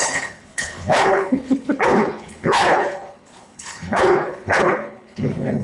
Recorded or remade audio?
remade